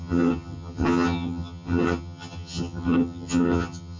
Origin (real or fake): fake